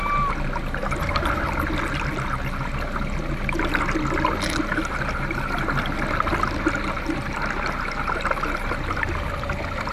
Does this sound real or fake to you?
real